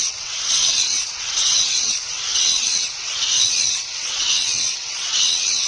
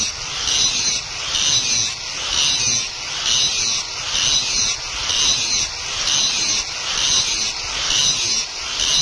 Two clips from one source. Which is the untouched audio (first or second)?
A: second